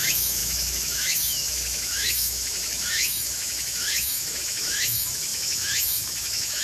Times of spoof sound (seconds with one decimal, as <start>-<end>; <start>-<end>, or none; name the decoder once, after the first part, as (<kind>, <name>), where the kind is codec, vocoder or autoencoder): 0.0-6.6 (autoencoder, DAC-VAE)